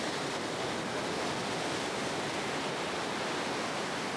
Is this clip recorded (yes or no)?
yes